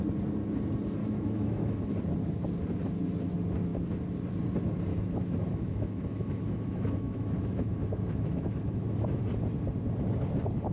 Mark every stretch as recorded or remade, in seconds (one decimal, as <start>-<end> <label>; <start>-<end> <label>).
0.0-1.0 recorded; 1.0-1.9 remade; 1.9-4.9 recorded; 4.9-9.2 remade; 9.2-10.7 recorded